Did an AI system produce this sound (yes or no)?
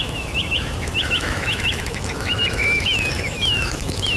yes